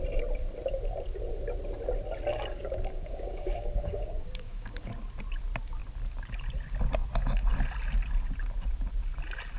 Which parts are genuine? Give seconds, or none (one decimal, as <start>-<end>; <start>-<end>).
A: 0.0-2.3; 4.9-9.6